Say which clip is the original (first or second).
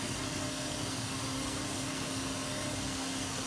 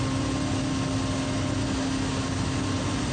second